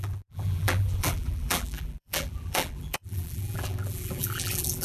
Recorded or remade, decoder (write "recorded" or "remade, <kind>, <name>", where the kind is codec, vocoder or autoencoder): remade, vocoder, BigVGAN v2